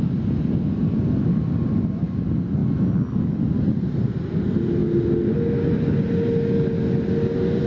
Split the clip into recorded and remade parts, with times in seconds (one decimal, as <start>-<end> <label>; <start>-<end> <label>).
0.0-7.7 recorded